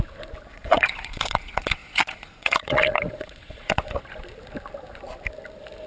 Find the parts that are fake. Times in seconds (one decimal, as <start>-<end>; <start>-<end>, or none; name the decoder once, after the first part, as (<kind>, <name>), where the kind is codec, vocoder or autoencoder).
0.5-4.0 (vocoder, Vocos)

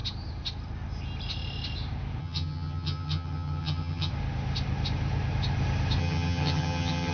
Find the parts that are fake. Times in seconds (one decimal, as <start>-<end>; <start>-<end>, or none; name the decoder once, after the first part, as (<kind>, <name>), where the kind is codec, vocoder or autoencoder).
2.2-4.1 (vocoder, HiFi-GAN); 6.0-7.1

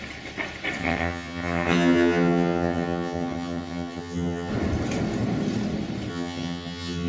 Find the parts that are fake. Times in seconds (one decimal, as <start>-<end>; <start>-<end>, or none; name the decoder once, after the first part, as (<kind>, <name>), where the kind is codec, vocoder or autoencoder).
0.8-4.5 (vocoder, HiFi-GAN); 6.1-7.1

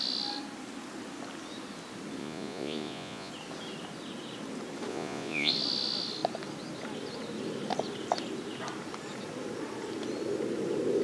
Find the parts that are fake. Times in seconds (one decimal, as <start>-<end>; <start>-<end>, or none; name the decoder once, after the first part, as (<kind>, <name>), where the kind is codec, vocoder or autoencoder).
2.2-3.3 (vocoder, Vocos); 4.9-5.5

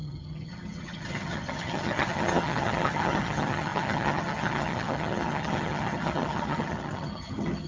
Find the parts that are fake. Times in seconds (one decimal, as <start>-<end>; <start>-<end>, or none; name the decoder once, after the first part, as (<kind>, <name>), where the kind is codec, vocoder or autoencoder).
0.0-7.7 (vocoder, HiFi-GAN)

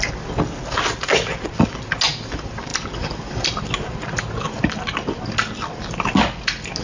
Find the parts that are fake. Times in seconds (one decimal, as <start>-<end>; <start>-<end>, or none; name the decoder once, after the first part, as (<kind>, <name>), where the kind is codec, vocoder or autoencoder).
none

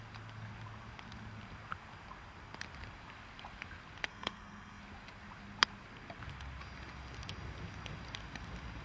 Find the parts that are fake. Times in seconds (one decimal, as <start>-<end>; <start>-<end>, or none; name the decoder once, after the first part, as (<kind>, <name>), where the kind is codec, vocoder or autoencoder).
4.1-4.8 (codec, SNAC)

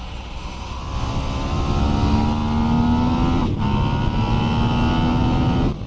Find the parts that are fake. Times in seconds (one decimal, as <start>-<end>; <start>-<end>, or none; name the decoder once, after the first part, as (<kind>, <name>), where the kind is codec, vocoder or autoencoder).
0.0-0.8 (autoencoder, DAC-VAE)